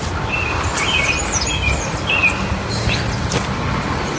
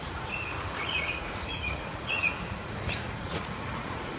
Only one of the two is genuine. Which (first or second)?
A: first